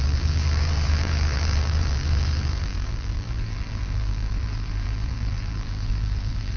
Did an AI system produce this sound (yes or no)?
yes